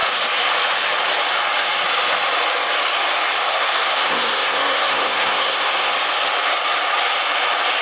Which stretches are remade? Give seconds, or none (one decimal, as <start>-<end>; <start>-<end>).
3.5-5.9